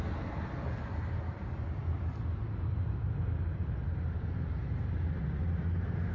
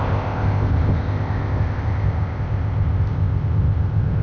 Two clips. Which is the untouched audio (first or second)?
first